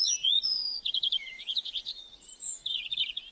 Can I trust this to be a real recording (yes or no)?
no